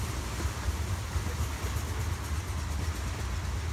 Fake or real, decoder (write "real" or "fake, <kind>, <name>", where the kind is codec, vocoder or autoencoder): real